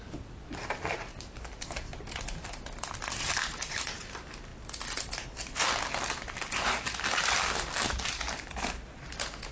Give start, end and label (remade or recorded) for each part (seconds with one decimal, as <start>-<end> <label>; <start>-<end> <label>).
0.0-9.5 recorded